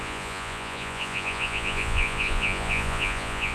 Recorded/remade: remade